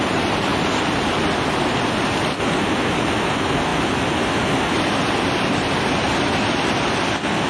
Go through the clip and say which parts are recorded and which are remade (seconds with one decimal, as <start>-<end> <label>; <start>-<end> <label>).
0.0-0.5 recorded; 0.5-1.2 remade; 1.2-7.5 recorded